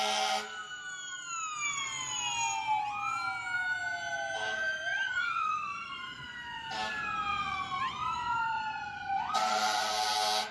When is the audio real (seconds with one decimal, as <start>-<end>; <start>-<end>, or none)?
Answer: 0.0-4.9; 6.7-7.3; 9.9-10.5